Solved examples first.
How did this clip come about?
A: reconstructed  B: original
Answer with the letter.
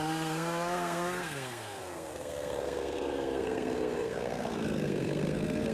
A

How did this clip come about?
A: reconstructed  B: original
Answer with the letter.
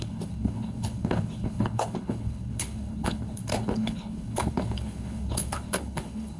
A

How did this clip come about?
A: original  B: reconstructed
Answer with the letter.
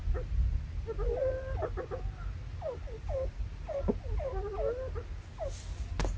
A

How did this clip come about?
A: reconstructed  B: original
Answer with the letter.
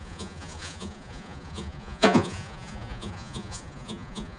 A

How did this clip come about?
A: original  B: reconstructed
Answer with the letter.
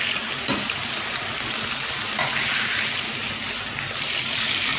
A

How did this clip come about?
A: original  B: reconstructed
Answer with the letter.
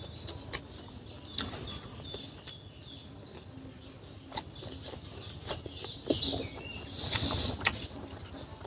A